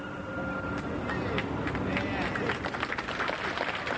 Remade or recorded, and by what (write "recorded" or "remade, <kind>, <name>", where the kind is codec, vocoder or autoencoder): recorded